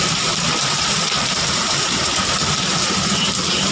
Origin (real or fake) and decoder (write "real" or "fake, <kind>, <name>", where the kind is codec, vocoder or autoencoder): fake, vocoder, BigVGAN v2